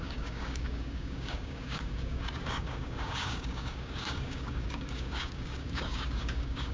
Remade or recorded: remade